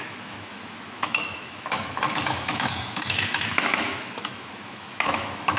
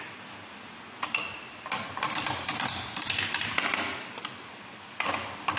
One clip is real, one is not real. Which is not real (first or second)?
first